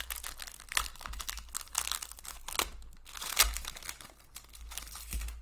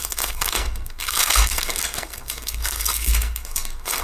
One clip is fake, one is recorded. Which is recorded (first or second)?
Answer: first